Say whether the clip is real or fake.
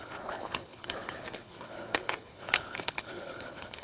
fake